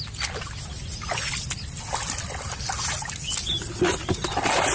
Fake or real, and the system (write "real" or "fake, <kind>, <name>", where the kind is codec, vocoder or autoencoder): real